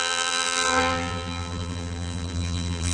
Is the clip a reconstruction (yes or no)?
yes